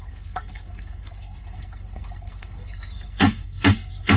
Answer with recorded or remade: remade